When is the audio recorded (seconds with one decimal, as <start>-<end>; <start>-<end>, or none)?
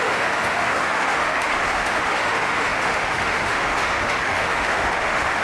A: none